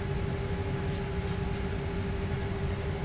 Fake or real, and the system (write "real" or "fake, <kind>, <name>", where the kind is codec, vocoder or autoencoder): real